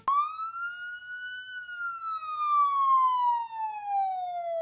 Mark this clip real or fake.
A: real